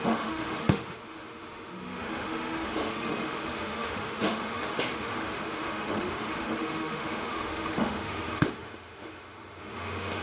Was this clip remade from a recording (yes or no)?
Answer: yes